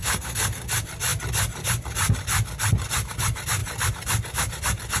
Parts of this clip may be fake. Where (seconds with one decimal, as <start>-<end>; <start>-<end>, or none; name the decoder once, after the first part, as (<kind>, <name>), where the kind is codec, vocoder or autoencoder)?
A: 0.0-0.7 (codec, SNAC)